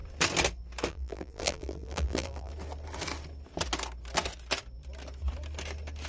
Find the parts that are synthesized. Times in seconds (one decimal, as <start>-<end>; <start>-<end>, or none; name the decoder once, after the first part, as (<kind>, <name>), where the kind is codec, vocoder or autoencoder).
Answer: 0.9-2.5 (vocoder, BigVGAN v2)